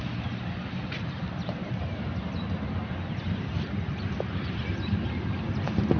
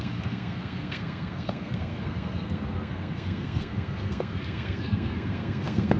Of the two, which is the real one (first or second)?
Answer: first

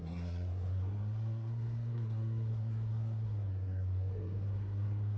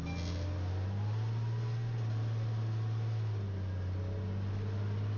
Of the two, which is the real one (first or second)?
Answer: second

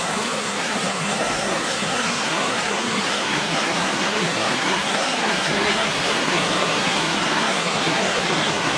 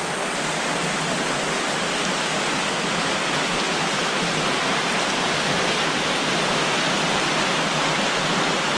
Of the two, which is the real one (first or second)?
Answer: second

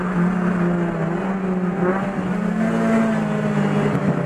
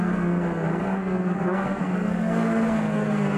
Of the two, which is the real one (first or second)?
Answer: first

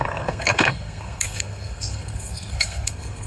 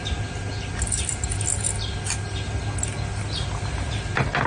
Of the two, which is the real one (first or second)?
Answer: second